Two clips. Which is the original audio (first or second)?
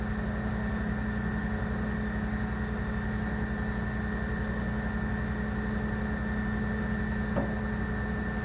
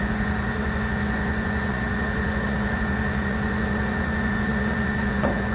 first